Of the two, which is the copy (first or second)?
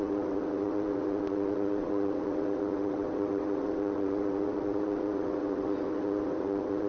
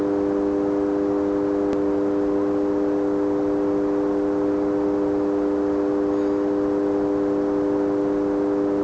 first